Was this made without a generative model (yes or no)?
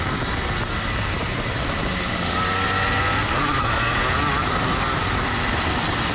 yes